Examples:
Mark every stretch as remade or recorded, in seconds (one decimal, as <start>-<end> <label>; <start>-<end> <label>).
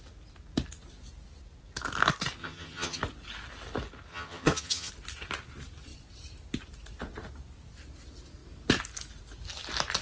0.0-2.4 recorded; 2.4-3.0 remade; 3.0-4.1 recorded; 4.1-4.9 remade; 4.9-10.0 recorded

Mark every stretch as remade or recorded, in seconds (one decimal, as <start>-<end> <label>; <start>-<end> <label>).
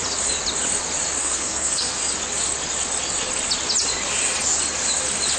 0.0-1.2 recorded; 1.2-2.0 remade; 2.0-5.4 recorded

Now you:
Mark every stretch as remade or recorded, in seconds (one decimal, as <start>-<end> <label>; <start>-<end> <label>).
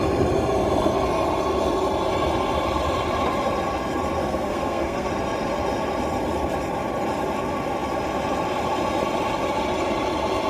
0.0-4.2 recorded; 4.2-5.1 remade; 5.1-10.5 recorded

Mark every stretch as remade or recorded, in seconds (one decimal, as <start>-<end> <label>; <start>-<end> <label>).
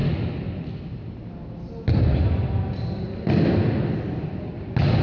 0.0-5.0 recorded